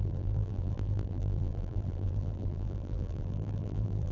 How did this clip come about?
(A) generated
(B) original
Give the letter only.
A